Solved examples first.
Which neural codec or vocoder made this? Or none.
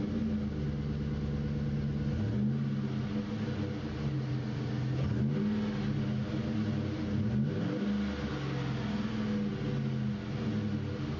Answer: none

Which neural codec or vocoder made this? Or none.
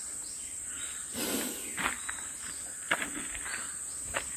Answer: none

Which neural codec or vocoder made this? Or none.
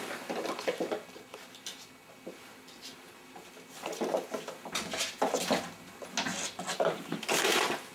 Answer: none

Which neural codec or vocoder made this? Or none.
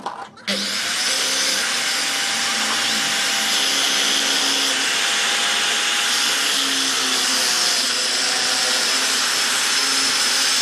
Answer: none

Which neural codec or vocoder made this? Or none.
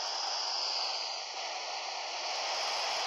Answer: none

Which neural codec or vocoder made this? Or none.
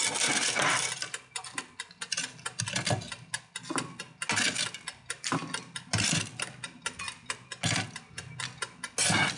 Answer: none